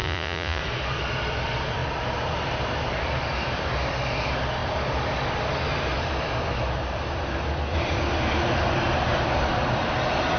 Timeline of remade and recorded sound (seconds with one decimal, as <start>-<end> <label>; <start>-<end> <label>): 0.0-0.6 remade; 0.6-10.4 recorded